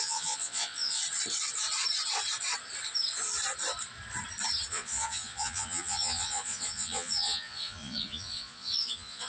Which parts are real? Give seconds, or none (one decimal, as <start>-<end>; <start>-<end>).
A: 1.0-4.7